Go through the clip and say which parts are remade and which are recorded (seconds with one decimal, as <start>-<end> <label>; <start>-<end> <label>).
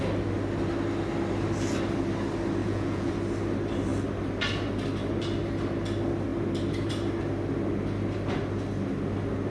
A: 0.0-2.6 recorded; 2.6-3.1 remade; 3.1-9.5 recorded